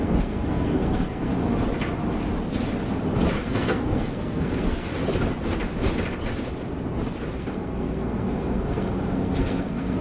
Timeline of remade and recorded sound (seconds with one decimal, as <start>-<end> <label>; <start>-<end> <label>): 0.0-1.3 remade; 1.3-3.4 recorded; 3.4-4.9 remade; 4.9-7.3 recorded; 7.3-10.0 remade